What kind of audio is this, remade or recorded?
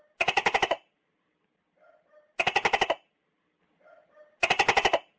recorded